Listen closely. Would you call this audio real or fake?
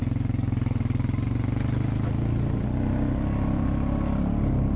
real